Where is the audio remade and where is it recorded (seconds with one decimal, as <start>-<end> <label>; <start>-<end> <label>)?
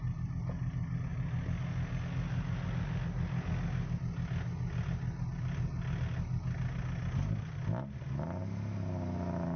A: 0.0-9.6 recorded